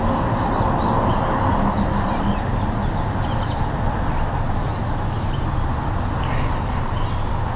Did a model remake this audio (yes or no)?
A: no